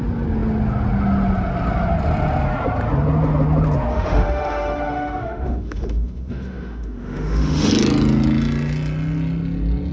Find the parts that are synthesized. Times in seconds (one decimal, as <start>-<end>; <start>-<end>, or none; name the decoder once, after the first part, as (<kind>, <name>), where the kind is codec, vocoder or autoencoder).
3.9-7.7 (autoencoder, DAC-VAE)